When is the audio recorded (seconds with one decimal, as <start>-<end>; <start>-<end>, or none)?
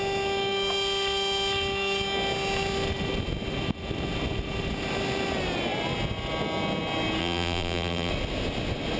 0.0-7.2; 8.1-9.0